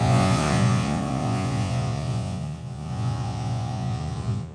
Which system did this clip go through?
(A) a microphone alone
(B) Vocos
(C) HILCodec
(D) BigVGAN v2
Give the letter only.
B